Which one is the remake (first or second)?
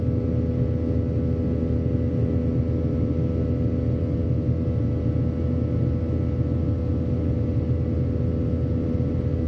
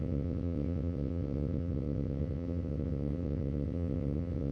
second